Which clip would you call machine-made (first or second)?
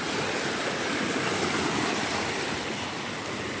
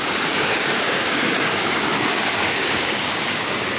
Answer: second